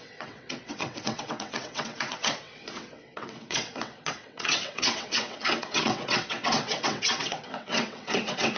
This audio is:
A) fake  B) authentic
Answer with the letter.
A